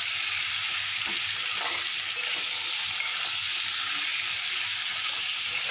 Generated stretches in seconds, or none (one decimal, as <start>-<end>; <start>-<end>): none